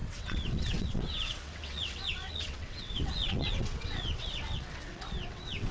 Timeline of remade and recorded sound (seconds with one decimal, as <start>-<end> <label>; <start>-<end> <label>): 0.0-5.7 remade